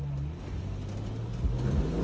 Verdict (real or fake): real